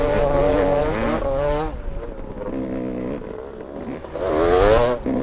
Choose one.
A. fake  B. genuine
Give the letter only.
B